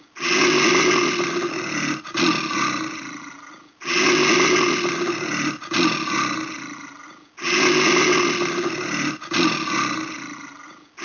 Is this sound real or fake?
real